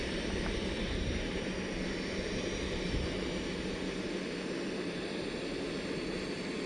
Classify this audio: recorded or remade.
remade